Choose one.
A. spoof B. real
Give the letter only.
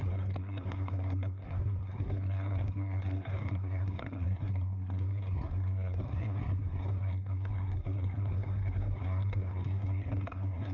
A